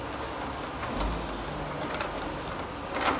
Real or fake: real